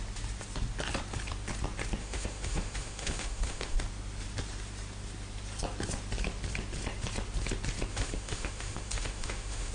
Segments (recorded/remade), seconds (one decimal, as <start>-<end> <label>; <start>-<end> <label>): 0.0-2.0 recorded; 2.0-3.8 remade; 3.8-7.9 recorded; 7.9-9.7 remade